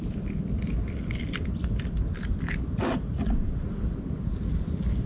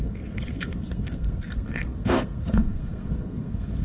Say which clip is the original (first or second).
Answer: first